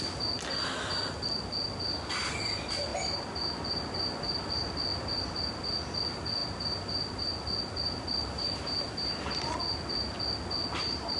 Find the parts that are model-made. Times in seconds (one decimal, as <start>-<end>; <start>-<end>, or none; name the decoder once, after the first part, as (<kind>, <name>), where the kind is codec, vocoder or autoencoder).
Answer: none